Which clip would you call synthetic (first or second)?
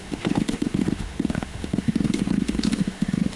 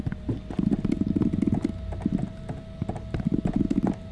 first